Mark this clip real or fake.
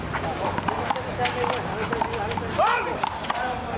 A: real